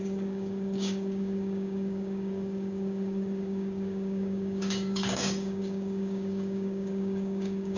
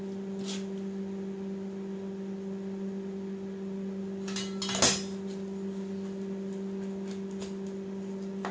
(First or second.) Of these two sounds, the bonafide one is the second